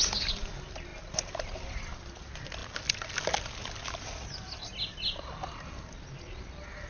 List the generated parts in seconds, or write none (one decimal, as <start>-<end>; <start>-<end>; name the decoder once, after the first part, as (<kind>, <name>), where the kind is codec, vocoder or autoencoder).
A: none